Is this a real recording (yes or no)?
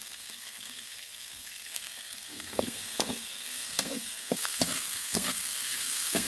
no